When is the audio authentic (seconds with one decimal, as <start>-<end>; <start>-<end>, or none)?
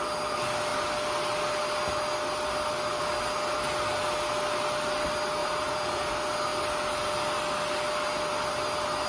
0.0-5.4; 6.1-9.1